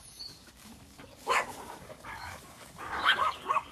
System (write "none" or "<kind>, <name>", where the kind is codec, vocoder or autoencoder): codec, DAC